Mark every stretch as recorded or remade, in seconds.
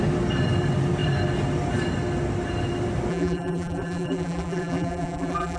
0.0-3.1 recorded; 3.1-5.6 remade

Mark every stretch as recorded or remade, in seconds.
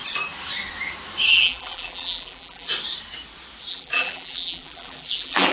0.0-1.3 recorded; 1.3-2.7 remade; 2.7-3.7 recorded; 3.7-5.5 remade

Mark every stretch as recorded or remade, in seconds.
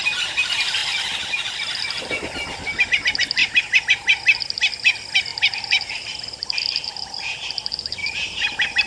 0.0-0.8 recorded; 0.8-1.6 remade; 1.6-5.3 recorded; 5.3-7.1 remade; 7.1-8.0 recorded; 8.0-8.9 remade